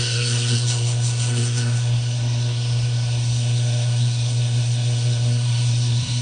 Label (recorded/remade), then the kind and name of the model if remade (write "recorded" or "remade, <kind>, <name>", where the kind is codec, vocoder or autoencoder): remade, codec, SNAC